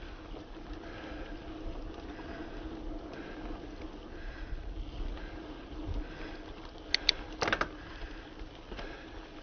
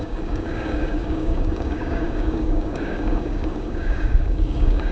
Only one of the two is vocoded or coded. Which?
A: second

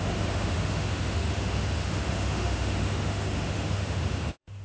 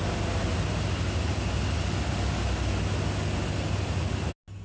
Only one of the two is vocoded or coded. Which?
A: first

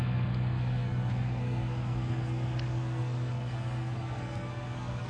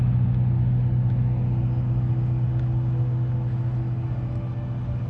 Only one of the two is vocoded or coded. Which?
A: first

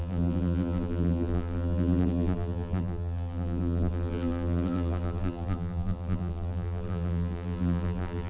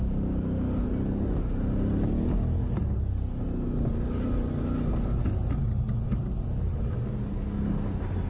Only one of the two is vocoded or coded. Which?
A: first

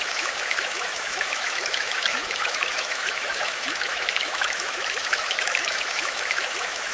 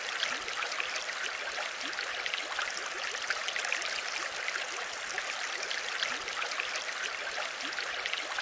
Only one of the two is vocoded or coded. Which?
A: first